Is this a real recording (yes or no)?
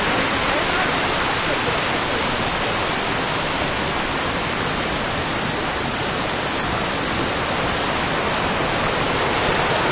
yes